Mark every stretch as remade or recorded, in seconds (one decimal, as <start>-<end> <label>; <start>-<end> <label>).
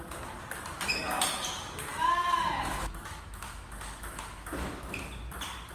0.0-1.9 recorded; 1.9-5.0 remade; 5.0-5.7 recorded